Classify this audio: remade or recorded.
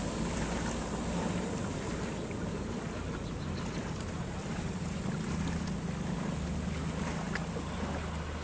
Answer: recorded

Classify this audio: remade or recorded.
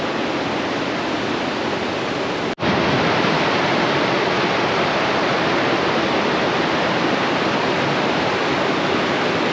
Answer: recorded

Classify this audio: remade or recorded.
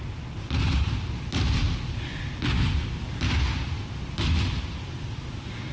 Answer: recorded